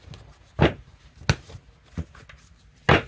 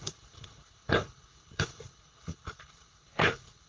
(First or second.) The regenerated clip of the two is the second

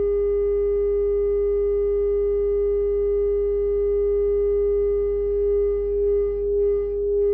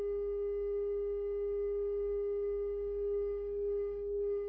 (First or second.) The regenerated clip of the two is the second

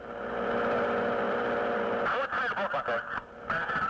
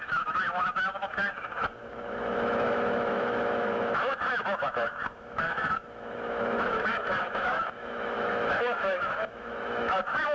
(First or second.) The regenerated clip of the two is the second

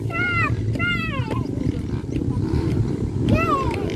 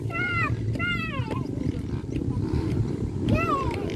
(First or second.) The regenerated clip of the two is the second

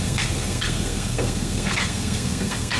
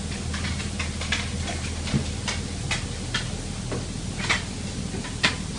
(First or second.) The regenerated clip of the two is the first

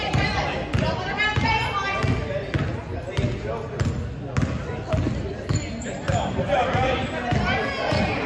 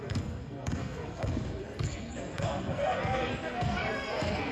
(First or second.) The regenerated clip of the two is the second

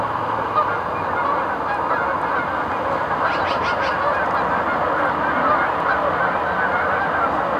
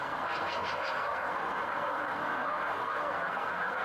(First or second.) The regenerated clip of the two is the second